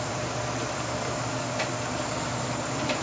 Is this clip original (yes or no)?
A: no